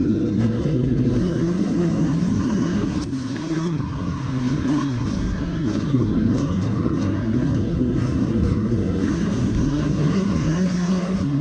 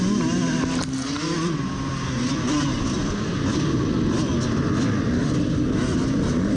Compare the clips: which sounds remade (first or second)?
first